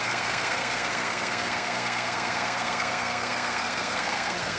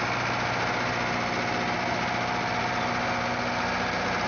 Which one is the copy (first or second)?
first